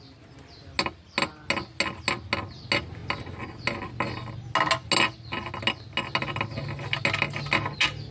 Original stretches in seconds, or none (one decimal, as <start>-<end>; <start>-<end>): 0.0-8.1